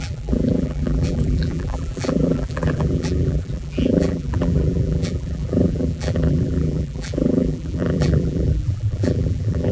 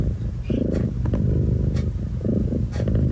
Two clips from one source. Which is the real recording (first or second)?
second